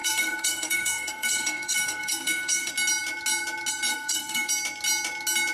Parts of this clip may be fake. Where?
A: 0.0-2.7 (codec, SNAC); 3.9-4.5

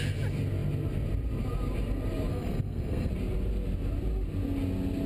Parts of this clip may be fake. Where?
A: 2.3-3.1 (codec, SNAC)